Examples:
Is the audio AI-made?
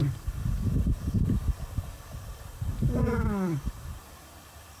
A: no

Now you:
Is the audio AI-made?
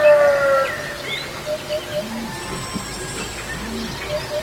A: no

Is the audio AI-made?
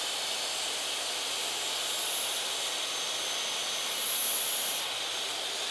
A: no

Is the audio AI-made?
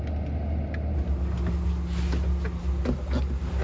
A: no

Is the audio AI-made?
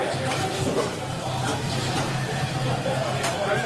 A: yes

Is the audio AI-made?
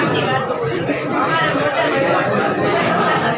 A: no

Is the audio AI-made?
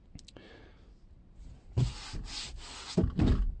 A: no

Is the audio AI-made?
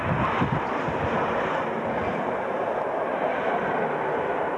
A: no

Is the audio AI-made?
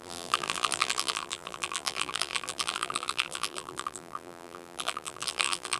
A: yes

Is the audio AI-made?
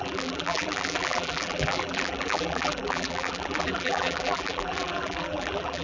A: yes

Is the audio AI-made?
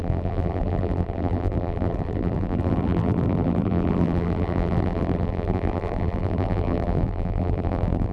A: yes